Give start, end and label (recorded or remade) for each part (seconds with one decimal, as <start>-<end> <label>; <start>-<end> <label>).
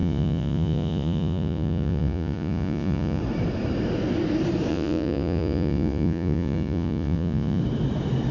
0.0-3.2 remade; 3.2-4.7 recorded; 4.7-7.6 remade; 7.6-8.3 recorded